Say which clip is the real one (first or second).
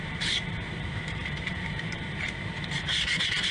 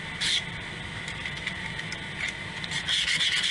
second